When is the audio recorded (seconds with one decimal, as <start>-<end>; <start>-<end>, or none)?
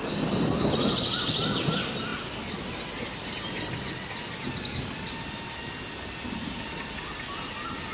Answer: 0.0-7.9